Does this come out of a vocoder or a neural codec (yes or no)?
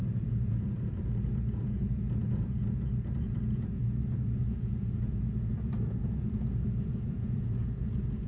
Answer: yes